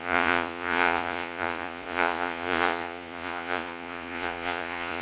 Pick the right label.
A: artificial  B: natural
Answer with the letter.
A